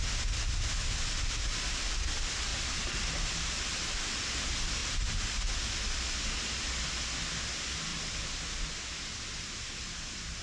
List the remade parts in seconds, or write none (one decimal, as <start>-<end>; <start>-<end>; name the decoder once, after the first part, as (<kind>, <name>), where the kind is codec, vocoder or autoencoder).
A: none